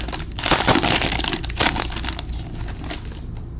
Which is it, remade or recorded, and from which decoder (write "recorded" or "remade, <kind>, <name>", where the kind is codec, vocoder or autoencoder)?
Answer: recorded